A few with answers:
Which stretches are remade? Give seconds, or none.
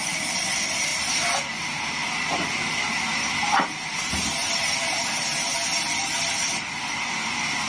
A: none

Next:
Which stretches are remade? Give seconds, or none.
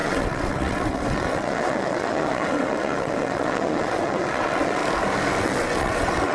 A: 0.0-4.8 (vocoder, WaveNeXt); 5.4-6.3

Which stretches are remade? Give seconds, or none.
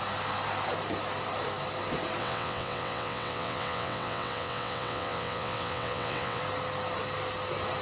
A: 2.2-6.4 (vocoder, WaveNeXt)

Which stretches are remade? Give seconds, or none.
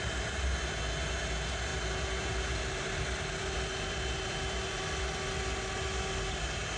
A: none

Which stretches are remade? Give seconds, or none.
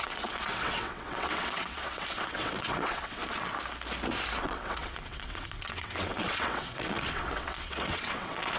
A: 0.0-3.2 (vocoder, WaveNeXt); 4.4-8.6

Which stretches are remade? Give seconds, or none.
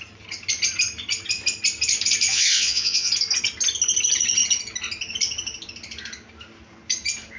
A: 2.3-3.1 (vocoder, WaveNeXt)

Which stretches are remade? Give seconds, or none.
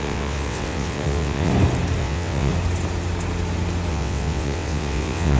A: 0.0-1.5 (vocoder, WaveNeXt); 2.0-2.5; 3.9-5.4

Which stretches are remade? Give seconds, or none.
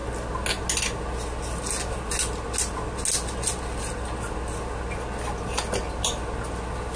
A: none